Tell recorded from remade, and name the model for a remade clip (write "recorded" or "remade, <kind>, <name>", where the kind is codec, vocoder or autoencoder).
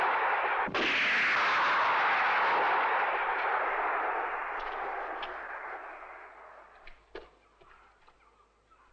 recorded